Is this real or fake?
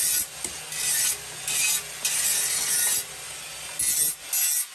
real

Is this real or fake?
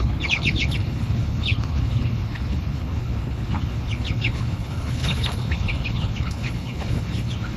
fake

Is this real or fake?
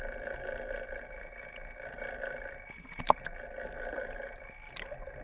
real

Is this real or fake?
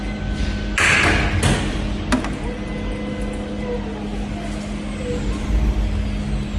real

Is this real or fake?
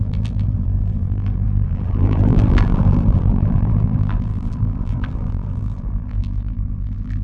fake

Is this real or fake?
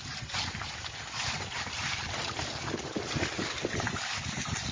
real